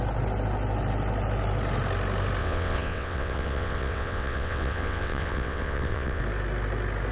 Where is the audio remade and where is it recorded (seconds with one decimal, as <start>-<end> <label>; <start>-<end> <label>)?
0.0-2.4 recorded; 2.4-6.2 remade; 6.2-7.1 recorded